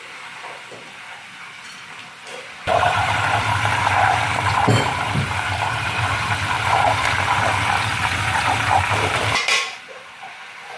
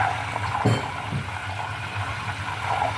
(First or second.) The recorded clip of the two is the second